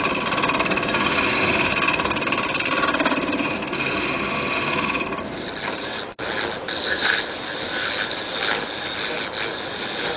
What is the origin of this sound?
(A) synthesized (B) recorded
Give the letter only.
B